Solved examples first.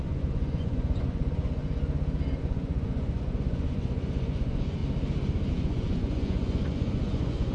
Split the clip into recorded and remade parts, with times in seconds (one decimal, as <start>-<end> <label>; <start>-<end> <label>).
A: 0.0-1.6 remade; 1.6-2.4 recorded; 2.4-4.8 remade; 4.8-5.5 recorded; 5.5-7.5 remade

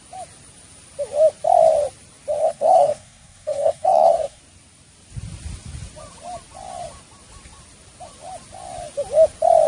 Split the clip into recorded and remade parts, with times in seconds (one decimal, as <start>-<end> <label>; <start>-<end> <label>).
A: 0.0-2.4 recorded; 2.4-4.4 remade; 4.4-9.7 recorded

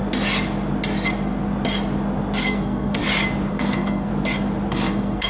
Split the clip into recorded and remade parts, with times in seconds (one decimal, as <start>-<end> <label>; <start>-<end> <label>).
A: 0.0-2.4 recorded; 2.4-3.0 remade; 3.0-3.5 recorded; 3.5-4.1 remade; 4.1-4.7 recorded; 4.7-5.3 remade